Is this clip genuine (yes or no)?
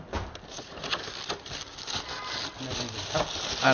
yes